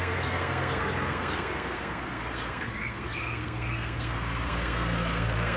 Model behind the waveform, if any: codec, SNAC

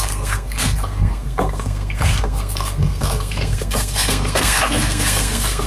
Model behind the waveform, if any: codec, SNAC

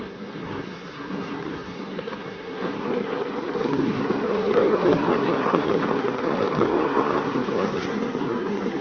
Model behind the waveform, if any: codec, SNAC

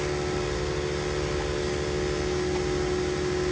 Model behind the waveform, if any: none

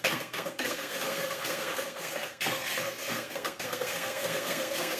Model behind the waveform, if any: codec, SNAC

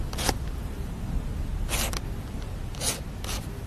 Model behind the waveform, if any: none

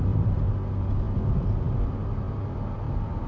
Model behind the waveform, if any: none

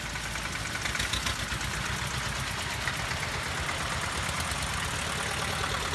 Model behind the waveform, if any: none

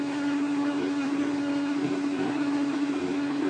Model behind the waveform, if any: codec, SNAC